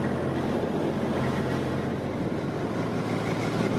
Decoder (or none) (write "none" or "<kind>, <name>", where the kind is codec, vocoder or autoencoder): none